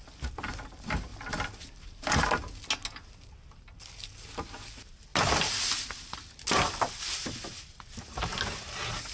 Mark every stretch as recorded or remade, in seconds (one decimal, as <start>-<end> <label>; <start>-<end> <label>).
0.0-9.1 recorded